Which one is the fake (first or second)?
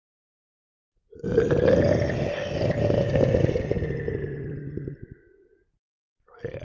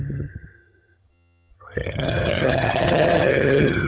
second